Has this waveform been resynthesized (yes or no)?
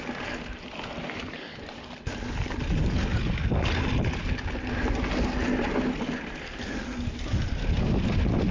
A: no